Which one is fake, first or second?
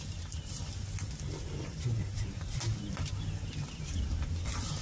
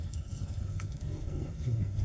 second